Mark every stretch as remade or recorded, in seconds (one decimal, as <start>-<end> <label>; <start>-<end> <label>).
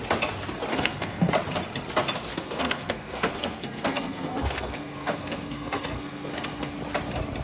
0.0-0.7 recorded; 0.7-1.3 remade; 1.3-2.3 recorded; 2.3-6.7 remade; 6.7-7.4 recorded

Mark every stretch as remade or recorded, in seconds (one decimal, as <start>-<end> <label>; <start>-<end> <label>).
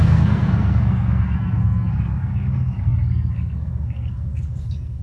0.0-5.0 remade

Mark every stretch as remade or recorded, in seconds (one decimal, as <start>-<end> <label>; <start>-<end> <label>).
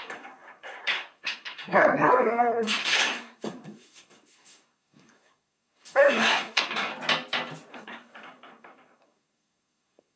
0.0-6.9 remade; 6.9-7.7 recorded; 7.7-10.2 remade